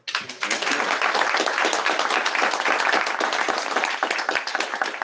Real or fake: real